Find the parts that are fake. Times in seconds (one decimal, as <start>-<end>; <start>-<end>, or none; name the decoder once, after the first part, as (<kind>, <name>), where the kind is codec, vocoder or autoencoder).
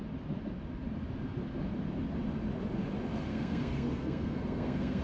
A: 3.3-5.0 (codec, SNAC)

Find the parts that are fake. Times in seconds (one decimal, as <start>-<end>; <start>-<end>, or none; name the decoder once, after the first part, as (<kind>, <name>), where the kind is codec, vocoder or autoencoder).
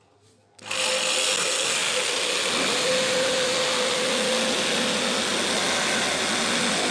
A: none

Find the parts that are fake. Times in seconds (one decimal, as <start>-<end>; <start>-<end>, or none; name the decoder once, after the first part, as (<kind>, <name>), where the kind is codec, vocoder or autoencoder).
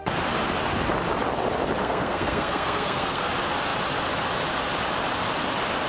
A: 1.8-3.3 (codec, SNAC)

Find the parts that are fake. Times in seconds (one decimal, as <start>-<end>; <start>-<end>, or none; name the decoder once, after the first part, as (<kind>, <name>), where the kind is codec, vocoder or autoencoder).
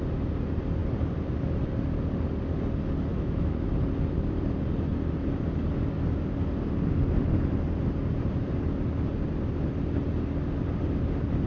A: 3.1-3.7 (autoencoder, DAC-VAE)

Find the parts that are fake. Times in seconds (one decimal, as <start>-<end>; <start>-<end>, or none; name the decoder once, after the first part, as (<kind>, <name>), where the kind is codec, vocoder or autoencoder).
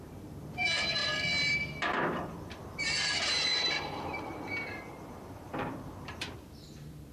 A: 0.0-7.1 (vocoder, BigVGAN v2)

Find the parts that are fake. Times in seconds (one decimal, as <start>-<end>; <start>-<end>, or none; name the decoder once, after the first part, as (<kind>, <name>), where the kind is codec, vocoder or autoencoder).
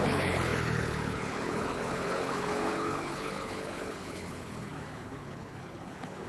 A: 0.0-6.3 (codec, HILCodec)